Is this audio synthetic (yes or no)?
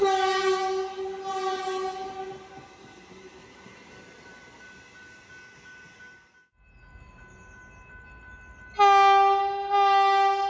no